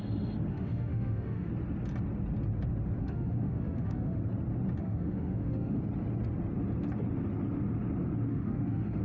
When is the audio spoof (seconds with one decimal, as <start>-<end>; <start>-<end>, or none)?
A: 0.5-1.5; 3.0-4.2; 4.8-5.8; 8.3-9.0